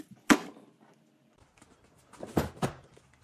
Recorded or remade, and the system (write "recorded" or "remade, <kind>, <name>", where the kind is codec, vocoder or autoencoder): recorded